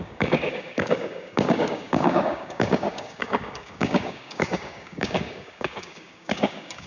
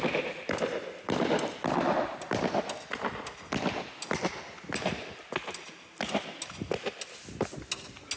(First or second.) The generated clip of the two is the first